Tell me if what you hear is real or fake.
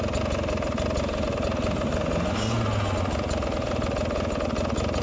real